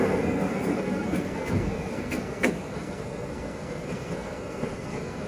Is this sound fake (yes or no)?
yes